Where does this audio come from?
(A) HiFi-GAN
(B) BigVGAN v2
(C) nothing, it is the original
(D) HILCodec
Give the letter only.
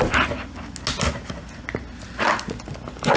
C